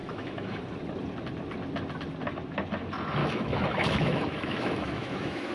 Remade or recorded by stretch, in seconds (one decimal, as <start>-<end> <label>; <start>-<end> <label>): 0.0-0.6 remade; 0.6-3.2 recorded; 3.2-5.5 remade